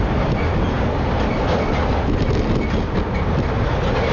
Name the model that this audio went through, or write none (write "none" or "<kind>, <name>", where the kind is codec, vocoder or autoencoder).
none